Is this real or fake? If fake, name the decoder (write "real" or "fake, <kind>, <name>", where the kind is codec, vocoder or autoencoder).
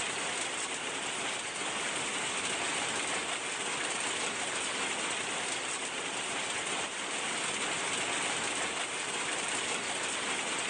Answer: real